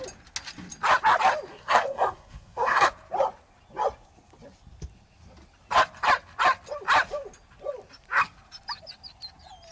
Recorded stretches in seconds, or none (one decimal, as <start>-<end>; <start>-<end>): 0.0-1.5; 2.9-9.7